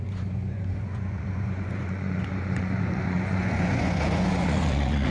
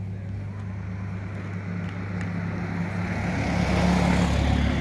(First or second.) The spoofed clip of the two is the first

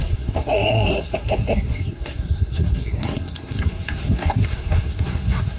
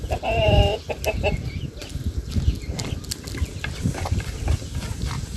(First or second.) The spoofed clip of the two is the first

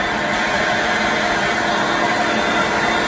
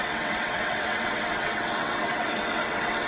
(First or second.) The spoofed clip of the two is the second